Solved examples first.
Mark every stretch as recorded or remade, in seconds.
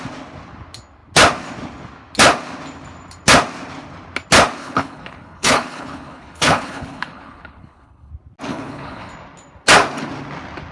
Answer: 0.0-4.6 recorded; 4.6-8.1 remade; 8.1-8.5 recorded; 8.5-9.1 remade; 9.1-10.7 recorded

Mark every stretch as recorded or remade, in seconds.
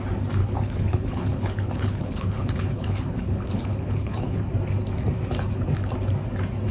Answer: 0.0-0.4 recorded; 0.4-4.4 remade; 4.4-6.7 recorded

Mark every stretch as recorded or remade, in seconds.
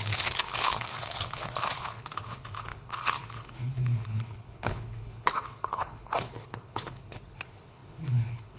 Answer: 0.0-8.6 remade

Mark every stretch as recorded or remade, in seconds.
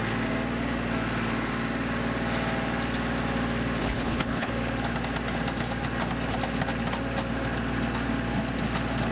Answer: 0.0-3.8 recorded; 3.8-4.5 remade; 4.5-9.1 recorded